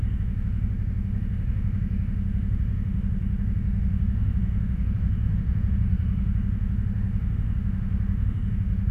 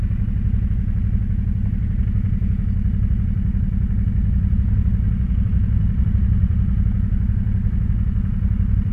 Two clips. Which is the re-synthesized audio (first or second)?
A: first